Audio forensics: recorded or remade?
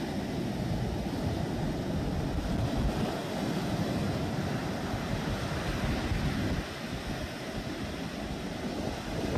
recorded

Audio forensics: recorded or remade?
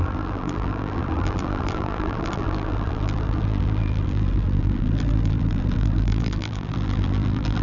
remade